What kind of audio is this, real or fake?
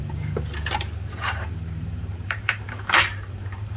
fake